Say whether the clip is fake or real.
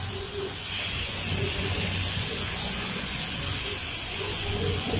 fake